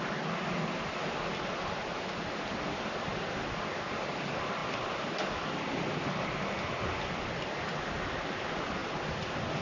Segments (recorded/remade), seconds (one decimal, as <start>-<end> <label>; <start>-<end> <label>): 0.0-9.6 recorded